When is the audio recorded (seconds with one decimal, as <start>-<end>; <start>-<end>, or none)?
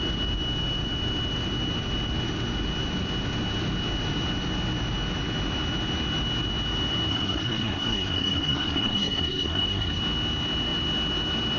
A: 0.0-7.1; 10.0-11.6